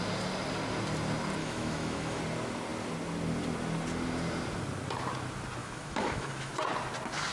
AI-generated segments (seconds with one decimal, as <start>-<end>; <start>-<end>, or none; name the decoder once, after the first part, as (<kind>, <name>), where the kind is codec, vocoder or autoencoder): 1.4-2.2 (autoencoder, DAC-VAE); 5.6-6.5

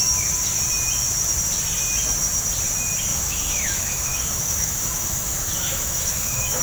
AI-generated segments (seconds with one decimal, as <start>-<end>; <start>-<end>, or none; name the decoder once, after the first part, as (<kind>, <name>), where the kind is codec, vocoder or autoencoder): 3.1-6.6 (autoencoder, DAC-VAE)

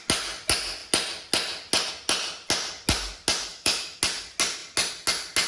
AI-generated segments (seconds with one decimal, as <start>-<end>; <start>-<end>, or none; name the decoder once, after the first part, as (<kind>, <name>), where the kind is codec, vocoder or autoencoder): 3.5-4.0 (autoencoder, DAC-VAE)

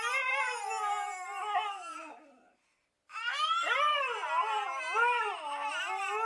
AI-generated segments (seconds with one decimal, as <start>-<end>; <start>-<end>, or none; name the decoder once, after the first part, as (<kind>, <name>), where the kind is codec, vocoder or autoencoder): none